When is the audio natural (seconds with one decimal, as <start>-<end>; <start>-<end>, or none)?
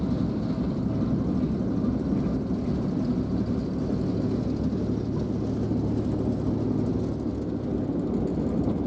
0.0-8.9